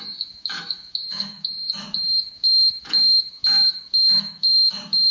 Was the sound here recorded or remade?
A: remade